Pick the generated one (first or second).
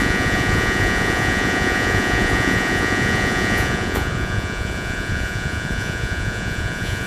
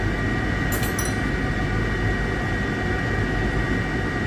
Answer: first